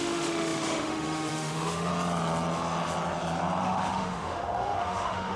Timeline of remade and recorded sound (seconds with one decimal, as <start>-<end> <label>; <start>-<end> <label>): 0.0-1.9 remade; 1.9-3.6 recorded; 3.6-5.4 remade